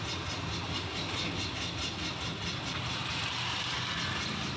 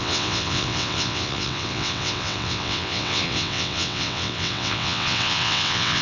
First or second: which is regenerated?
second